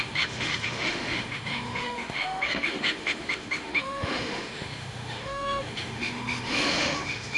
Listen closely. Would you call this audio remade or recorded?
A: remade